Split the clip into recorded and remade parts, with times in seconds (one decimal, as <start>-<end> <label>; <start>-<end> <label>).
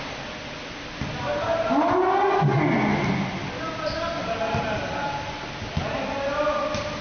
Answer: 0.0-7.0 recorded